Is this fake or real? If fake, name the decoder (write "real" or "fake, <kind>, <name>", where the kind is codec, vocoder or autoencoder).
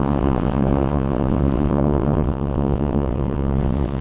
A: fake, vocoder, WaveNeXt